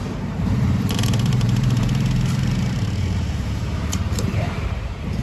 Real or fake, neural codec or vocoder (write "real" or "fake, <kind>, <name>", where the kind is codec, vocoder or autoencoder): fake, vocoder, BigVGAN v2